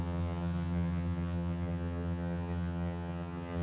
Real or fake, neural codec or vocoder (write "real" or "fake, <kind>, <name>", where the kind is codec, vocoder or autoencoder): fake, vocoder, HiFi-GAN